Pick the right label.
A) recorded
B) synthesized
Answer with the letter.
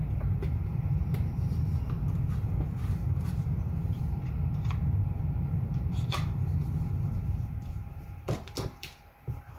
B